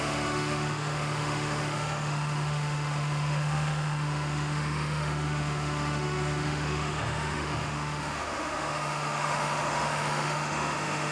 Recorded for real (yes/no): no